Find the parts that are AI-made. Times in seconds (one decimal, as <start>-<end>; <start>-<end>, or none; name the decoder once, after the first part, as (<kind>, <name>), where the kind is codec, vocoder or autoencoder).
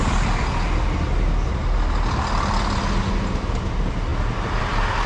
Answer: none